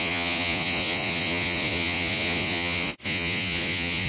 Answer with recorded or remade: remade